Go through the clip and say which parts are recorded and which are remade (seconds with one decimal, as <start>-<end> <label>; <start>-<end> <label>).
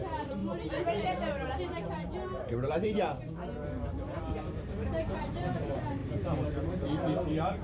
0.0-0.4 remade; 0.4-1.5 recorded; 1.5-3.1 remade; 3.1-3.9 recorded; 3.9-7.6 remade